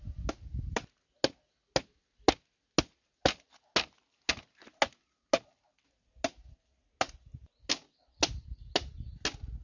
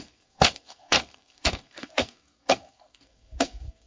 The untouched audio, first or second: first